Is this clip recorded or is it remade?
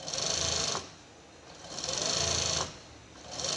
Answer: recorded